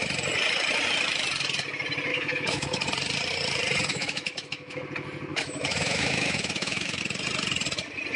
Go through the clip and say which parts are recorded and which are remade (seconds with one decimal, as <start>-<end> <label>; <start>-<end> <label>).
0.0-2.1 recorded; 2.1-2.8 remade; 2.8-3.9 recorded; 3.9-4.8 remade; 4.8-5.3 recorded; 5.3-7.0 remade; 7.0-8.2 recorded